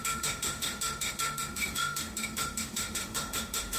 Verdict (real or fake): fake